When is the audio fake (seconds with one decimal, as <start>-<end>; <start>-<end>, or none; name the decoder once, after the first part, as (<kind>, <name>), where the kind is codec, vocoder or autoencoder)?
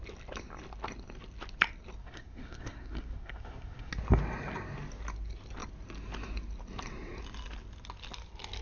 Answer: 2.0-3.9 (codec, SNAC)